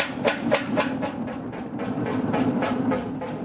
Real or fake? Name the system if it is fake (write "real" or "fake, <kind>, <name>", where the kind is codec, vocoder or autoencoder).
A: real